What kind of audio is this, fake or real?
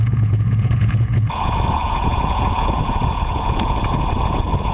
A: fake